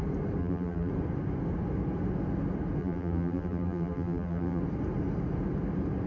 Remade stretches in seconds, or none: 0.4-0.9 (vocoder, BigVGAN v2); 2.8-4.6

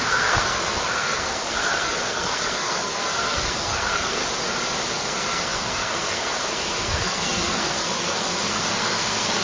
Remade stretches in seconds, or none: 0.0-4.2 (codec, SNAC); 4.9-9.4